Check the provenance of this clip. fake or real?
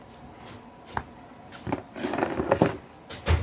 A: real